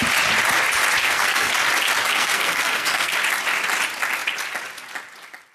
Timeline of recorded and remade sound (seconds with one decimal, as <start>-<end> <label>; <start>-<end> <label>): 0.0-1.0 recorded; 1.0-1.5 remade; 1.5-2.1 recorded; 2.1-3.1 remade; 3.1-5.5 recorded